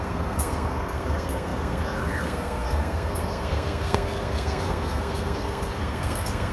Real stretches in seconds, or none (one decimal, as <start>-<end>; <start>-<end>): none